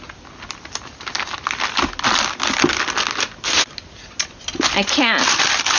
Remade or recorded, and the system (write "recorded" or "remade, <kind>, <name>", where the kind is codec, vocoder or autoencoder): recorded